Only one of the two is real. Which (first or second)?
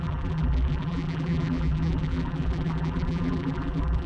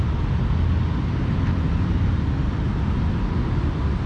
second